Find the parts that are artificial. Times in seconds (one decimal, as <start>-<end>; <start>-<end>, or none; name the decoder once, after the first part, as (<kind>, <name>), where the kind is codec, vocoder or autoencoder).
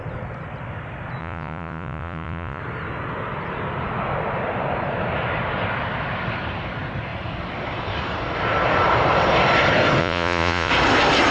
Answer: 1.2-2.6 (vocoder, Vocos); 10.0-10.7